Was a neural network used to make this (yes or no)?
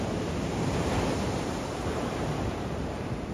yes